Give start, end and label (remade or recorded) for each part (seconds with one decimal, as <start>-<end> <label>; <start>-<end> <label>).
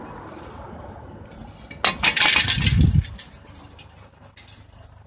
0.0-5.1 recorded